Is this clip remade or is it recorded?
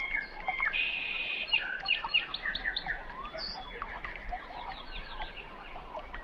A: recorded